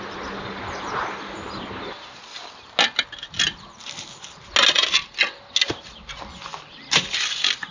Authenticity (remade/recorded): recorded